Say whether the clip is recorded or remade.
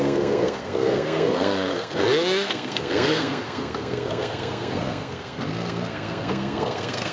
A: remade